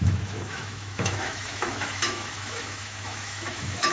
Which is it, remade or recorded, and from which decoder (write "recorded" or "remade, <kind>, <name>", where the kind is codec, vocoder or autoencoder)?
remade, autoencoder, DAC-VAE